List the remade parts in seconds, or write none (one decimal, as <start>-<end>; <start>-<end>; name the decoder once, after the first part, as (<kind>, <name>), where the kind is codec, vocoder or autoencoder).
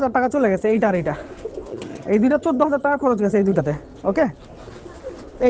0.0-0.9 (vocoder, HiFi-GAN); 1.7-3.6